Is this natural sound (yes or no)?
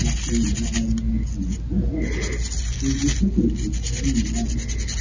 yes